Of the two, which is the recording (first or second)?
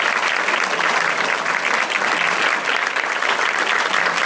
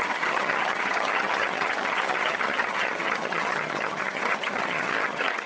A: first